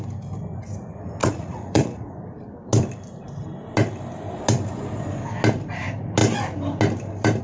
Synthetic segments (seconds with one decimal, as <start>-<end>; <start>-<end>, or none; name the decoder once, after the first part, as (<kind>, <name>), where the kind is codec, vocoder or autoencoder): 1.2-2.1 (vocoder, Vocos)

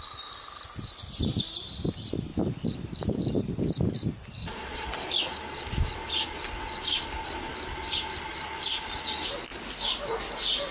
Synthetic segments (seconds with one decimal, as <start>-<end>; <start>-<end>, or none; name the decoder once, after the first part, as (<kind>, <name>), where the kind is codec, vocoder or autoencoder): 4.4-4.9 (vocoder, Vocos)

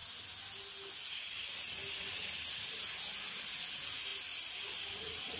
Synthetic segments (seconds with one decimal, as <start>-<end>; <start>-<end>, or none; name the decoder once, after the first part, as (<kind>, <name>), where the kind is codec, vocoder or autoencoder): none

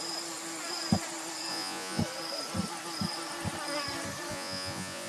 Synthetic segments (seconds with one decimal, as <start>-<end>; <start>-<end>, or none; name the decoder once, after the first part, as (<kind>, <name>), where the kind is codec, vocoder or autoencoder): 1.5-2.0 (vocoder, Vocos); 4.3-5.1